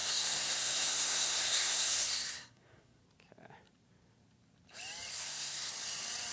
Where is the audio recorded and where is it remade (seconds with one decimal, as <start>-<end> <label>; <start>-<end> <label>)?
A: 0.0-3.0 remade; 3.0-5.1 recorded; 5.1-5.7 remade; 5.7-6.3 recorded